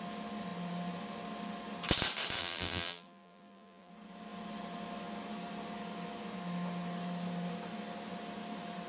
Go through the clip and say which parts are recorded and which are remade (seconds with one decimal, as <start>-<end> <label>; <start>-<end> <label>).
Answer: 0.0-2.4 recorded; 2.4-3.9 remade; 3.9-8.9 recorded